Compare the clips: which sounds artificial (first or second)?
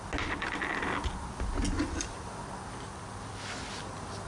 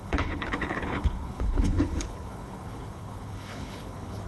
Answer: second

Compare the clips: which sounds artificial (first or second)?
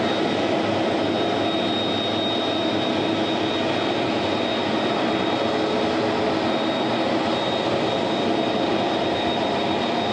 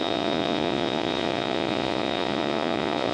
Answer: second